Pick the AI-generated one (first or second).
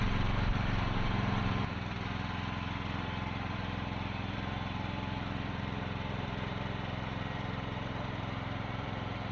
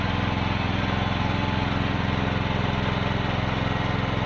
first